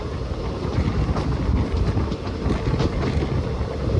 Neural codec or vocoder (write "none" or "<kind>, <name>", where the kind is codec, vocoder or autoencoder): none